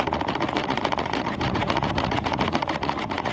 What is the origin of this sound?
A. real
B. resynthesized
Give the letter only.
B